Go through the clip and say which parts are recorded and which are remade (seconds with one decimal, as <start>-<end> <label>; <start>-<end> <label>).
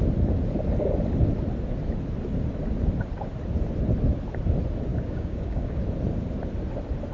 0.0-4.9 recorded; 4.9-5.8 remade; 5.8-7.1 recorded